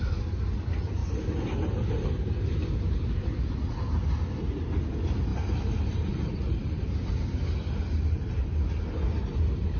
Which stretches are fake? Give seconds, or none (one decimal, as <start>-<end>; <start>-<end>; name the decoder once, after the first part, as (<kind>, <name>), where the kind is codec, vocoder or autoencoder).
5.3-7.2 (vocoder, BigVGAN v2)